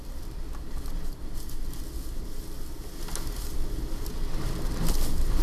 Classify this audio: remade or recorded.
recorded